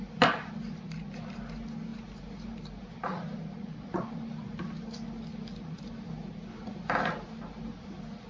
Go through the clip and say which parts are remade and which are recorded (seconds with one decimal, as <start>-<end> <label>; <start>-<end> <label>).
0.0-8.3 recorded